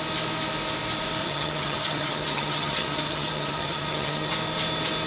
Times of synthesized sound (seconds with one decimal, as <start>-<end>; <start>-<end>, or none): 1.2-4.3